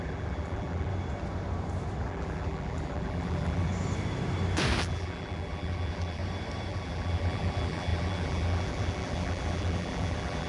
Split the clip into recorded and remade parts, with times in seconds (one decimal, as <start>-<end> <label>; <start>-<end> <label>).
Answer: 0.0-0.9 remade; 0.9-2.0 recorded; 2.0-3.7 remade; 3.7-4.8 recorded; 4.8-6.2 remade; 6.2-6.7 recorded; 6.7-10.5 remade